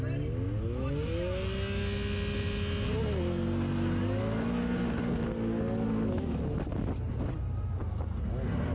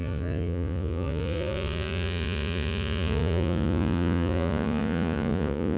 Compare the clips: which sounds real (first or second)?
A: first